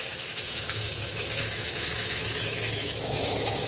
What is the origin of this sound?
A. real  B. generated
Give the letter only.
B